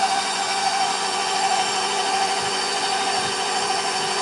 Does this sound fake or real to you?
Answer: fake